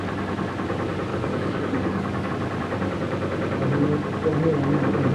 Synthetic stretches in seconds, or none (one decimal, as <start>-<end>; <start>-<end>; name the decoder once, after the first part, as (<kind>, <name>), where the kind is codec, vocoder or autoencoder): 1.1-2.3 (codec, DAC)